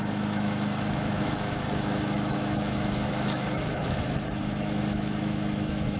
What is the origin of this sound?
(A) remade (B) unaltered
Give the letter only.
A